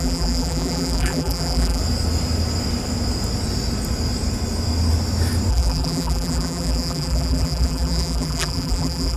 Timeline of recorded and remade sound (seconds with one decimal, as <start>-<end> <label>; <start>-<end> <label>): 0.0-1.8 remade; 1.8-5.5 recorded; 5.5-9.2 remade